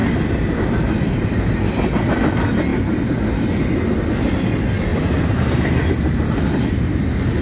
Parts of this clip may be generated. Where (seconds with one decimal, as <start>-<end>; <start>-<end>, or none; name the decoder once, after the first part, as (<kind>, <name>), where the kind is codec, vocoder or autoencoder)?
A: none

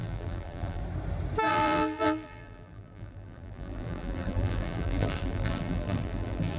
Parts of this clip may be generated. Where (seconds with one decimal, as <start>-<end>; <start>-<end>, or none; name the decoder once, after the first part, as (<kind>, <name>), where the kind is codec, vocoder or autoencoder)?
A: 0.0-0.8 (vocoder, BigVGAN v2); 1.5-6.6